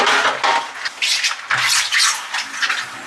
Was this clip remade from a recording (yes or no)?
no